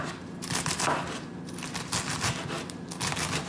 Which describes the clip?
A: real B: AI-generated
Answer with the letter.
A